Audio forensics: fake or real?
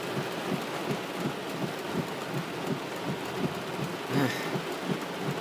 real